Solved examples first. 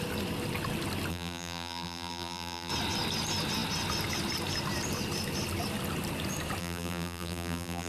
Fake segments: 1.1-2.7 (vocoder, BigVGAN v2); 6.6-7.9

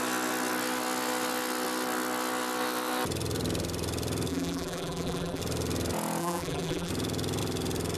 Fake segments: 4.3-5.4 (vocoder, BigVGAN v2); 6.2-6.9

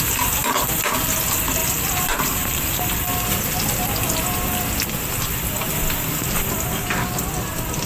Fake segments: 1.6-2.8 (vocoder, BigVGAN v2)

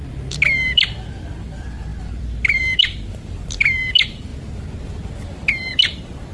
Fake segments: 0.0-4.3 (vocoder, BigVGAN v2); 5.5-6.3

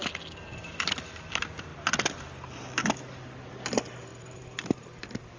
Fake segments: 4.1-5.4 (vocoder, BigVGAN v2)

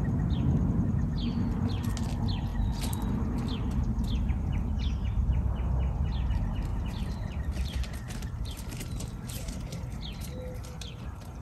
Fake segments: 6.7-11.4 (vocoder, BigVGAN v2)

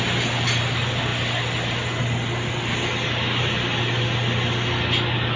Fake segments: none